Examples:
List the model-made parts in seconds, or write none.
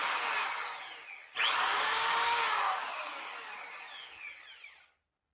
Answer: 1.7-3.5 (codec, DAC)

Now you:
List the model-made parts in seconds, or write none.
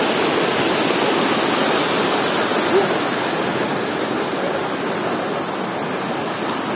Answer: 3.1-4.3 (vocoder, BigVGAN v2)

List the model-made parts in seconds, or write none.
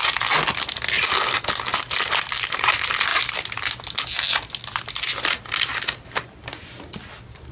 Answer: none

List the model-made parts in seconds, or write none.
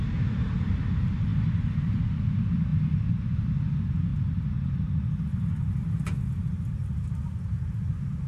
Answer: 1.3-2.0 (vocoder, BigVGAN v2); 2.7-3.5; 4.1-4.7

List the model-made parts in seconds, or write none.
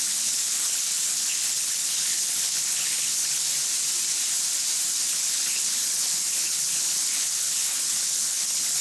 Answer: 0.0-3.5 (codec, HILCodec); 5.1-8.8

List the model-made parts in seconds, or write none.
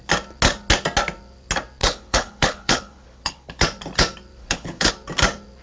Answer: 1.8-3.6 (codec, HILCodec); 4.4-4.9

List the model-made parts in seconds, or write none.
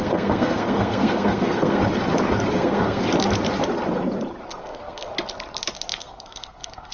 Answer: 0.0-1.8 (codec, SNAC); 2.5-3.0; 4.6-5.1; 6.0-6.9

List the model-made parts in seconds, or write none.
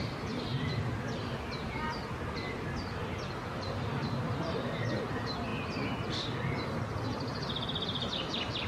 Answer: none